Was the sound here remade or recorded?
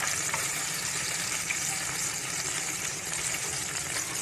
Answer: remade